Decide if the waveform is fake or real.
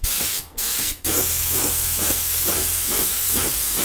fake